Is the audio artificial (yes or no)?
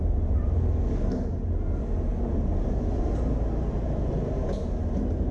no